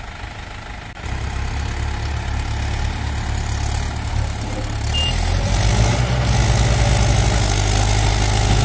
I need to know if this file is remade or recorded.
recorded